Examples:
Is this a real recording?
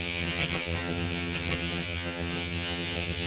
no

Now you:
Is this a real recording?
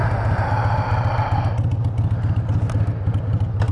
yes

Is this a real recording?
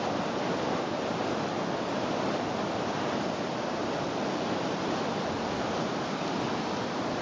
yes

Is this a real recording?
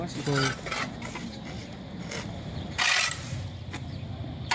yes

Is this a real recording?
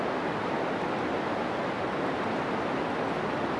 yes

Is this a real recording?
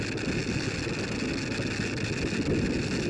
yes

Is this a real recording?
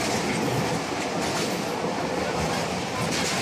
yes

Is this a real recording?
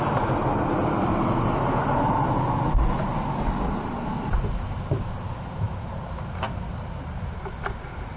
yes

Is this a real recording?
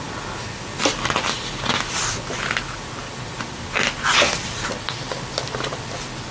yes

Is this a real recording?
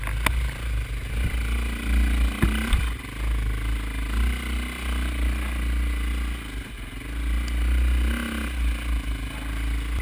yes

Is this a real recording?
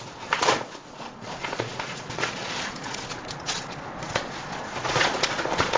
no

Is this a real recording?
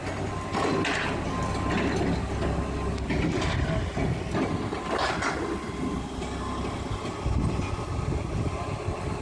yes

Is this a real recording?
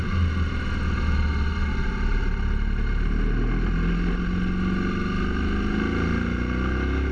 yes